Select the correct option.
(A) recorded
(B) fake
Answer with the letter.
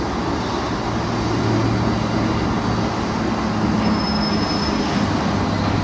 A